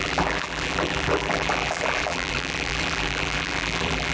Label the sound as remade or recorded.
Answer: remade